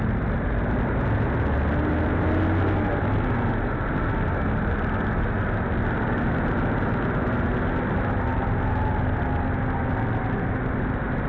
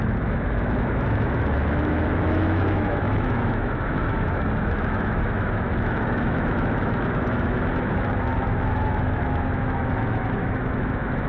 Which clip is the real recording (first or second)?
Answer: first